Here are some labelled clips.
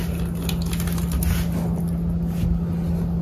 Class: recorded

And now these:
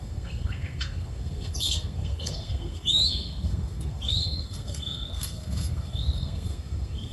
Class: remade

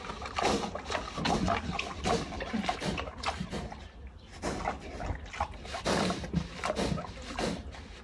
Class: recorded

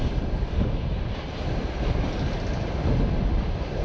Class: recorded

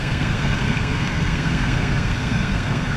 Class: remade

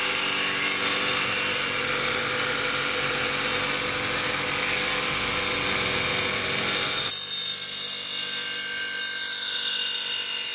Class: recorded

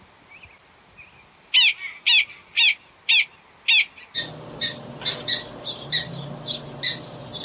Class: recorded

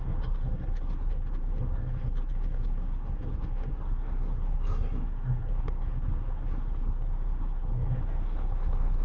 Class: remade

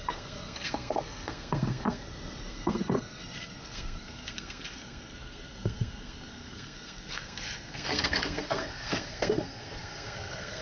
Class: remade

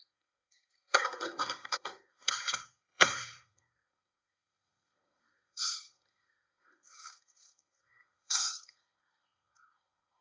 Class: remade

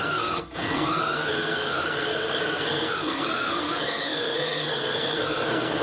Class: remade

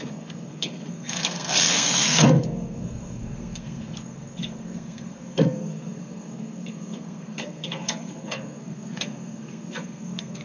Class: remade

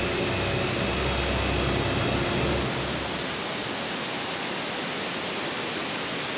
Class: recorded